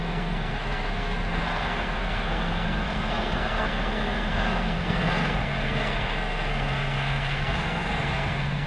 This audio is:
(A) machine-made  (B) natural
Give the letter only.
A